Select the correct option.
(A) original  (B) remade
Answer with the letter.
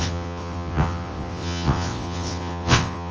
B